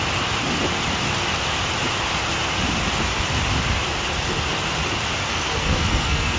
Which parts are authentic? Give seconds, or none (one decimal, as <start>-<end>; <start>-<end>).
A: 0.0-5.3